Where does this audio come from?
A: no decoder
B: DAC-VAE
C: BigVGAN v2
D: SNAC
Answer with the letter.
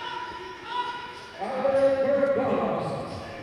B